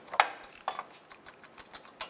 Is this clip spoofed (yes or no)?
no